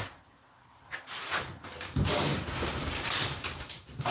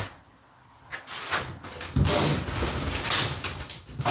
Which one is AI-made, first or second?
first